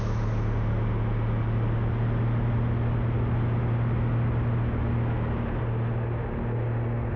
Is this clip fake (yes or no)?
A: no